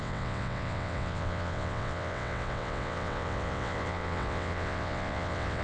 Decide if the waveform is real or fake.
fake